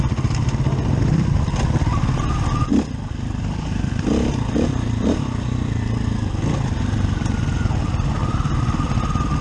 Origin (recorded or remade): recorded